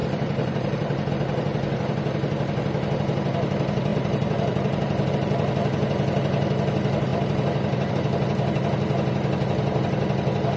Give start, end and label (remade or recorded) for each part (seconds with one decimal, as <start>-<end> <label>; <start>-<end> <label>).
0.0-1.1 remade; 1.1-3.9 recorded; 3.9-5.1 remade; 5.1-10.6 recorded